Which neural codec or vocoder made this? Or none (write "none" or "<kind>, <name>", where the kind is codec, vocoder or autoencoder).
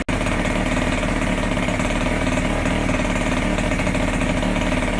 none